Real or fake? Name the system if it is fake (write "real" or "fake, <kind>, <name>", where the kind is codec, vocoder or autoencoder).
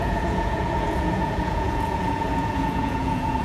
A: fake, vocoder, Vocos